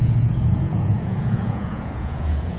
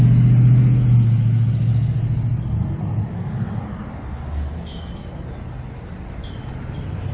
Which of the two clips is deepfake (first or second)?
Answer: first